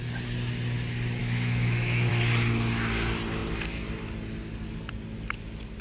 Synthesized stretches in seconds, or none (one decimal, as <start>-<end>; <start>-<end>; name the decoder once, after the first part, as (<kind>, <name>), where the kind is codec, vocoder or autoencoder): 1.2-2.1 (autoencoder, DAC-VAE)